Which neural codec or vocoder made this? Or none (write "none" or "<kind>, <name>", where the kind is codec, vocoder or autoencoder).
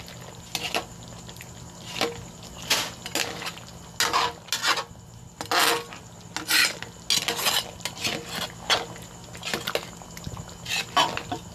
none